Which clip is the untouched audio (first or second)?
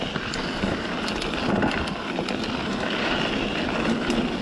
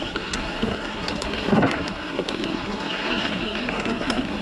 first